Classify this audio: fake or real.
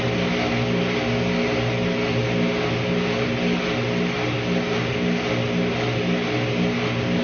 real